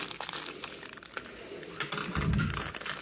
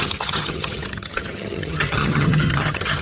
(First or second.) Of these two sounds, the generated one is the second